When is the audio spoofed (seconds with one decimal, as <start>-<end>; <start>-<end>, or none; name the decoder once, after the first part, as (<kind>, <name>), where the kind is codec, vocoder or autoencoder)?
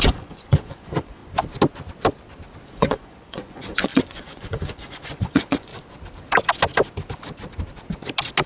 0.0-1.2 (vocoder, Vocos); 2.7-5.7